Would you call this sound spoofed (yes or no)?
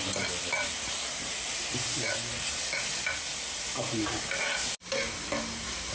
no